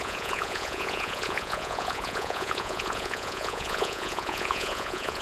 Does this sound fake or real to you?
fake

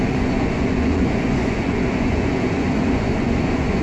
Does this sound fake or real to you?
fake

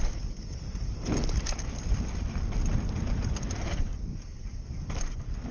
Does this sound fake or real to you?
real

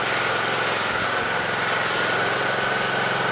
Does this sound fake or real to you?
real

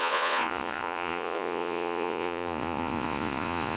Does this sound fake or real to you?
fake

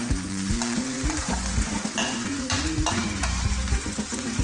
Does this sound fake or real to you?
fake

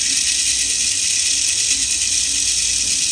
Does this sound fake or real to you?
real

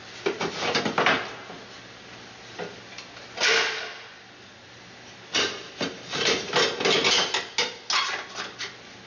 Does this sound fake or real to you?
real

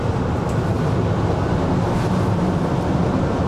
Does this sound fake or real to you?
real